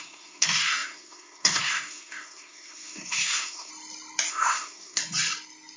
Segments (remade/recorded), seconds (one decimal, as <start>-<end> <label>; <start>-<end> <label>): 0.0-3.7 remade; 3.7-4.3 recorded; 4.3-5.0 remade; 5.0-5.8 recorded